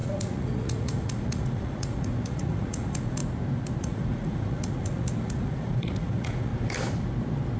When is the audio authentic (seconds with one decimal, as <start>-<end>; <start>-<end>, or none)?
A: 3.2-3.8; 6.5-7.6